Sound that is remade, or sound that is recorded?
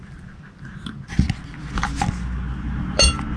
recorded